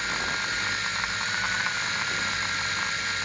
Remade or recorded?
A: recorded